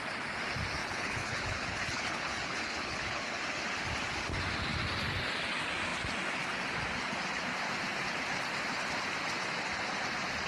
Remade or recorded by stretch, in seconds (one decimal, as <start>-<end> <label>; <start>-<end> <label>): 0.0-0.8 recorded; 0.8-3.4 remade; 3.4-10.5 recorded

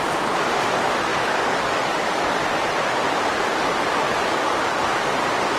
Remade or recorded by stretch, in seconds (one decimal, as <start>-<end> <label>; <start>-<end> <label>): 0.0-1.1 recorded; 1.1-2.3 remade; 2.3-4.3 recorded; 4.3-5.0 remade; 5.0-5.6 recorded

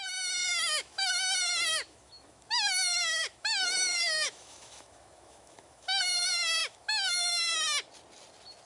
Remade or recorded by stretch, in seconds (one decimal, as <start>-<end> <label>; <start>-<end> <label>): 0.0-0.4 recorded; 0.4-1.1 remade; 1.1-1.7 recorded; 1.7-6.0 remade; 6.0-6.6 recorded; 6.6-7.5 remade; 7.5-8.7 recorded

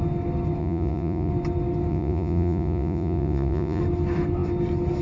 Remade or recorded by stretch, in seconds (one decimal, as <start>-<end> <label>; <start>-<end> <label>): 0.0-0.6 recorded; 0.6-1.3 remade; 1.3-1.9 recorded; 1.9-3.8 remade; 3.8-5.0 recorded

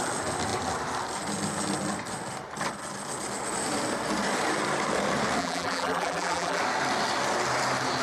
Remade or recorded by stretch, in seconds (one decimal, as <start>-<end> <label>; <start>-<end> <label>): 0.0-5.4 recorded; 5.4-6.6 remade; 6.6-8.0 recorded

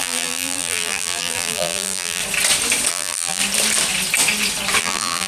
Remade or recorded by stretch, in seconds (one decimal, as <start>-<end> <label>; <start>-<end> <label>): 0.0-2.2 remade; 2.2-2.9 recorded; 2.9-3.4 remade; 3.4-4.8 recorded; 4.8-5.3 remade